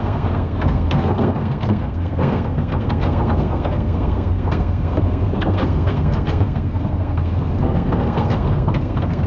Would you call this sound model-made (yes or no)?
yes